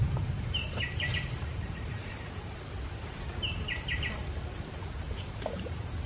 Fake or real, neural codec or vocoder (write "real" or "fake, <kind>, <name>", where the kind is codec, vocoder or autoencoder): fake, vocoder, BigVGAN v2